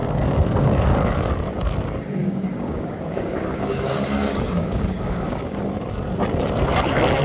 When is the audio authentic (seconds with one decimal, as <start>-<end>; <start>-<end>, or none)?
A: 0.0-2.2; 5.6-7.2